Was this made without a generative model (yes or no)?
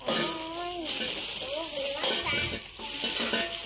yes